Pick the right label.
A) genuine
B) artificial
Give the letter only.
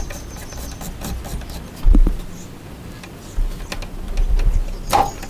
A